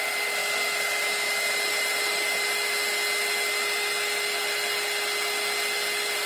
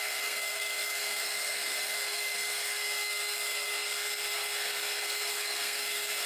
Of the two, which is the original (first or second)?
first